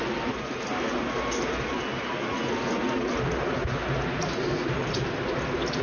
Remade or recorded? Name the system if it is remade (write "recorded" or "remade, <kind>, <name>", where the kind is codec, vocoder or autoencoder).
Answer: recorded